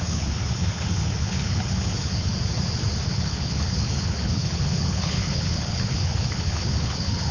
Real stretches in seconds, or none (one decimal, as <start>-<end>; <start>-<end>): 2.3-3.1